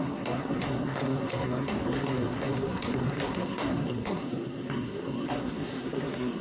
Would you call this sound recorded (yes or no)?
no